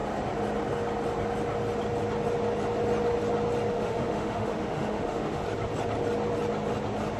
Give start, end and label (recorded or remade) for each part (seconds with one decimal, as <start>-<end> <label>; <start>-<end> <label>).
0.0-3.7 recorded; 3.7-5.4 remade; 5.4-7.2 recorded